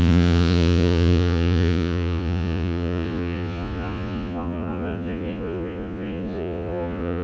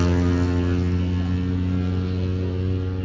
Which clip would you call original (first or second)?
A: second